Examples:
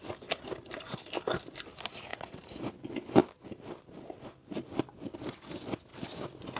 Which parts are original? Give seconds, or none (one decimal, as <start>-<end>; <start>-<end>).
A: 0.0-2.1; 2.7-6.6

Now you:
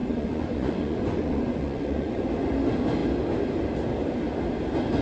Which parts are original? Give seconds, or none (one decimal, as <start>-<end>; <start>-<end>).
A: 2.3-5.0

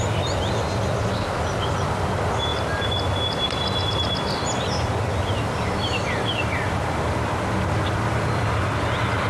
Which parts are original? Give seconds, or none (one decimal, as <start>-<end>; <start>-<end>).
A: 0.0-9.3

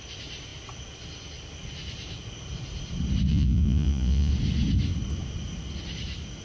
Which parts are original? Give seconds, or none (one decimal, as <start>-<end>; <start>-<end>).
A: 0.0-3.3; 4.3-6.4